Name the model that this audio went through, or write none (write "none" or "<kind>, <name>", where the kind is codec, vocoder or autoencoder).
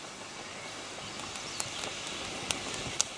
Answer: none